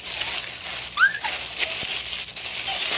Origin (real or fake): real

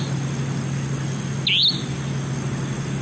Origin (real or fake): real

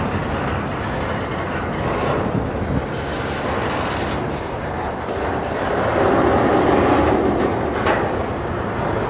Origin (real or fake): real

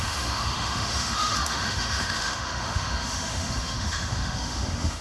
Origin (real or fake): fake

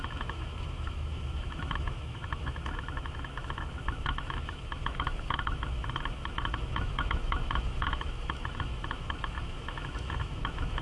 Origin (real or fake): fake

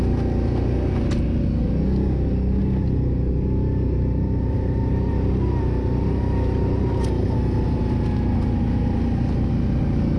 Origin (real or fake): real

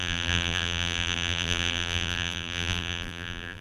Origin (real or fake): fake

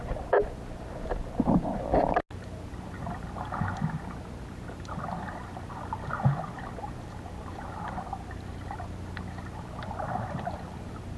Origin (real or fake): real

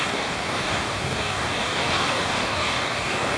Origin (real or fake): fake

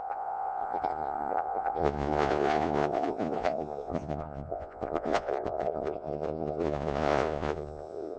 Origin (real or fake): fake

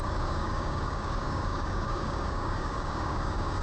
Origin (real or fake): fake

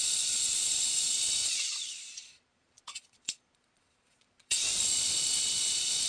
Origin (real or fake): fake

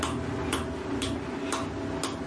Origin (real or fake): real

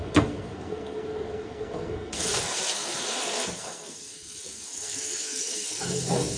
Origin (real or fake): fake